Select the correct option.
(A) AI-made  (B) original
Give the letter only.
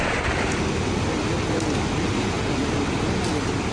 B